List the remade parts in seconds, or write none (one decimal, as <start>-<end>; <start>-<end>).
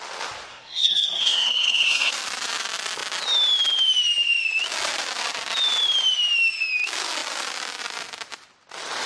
0.5-2.1